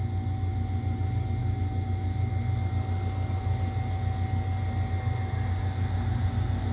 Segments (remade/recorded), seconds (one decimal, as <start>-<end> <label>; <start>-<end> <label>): 0.0-1.4 recorded; 1.4-2.7 remade; 2.7-6.7 recorded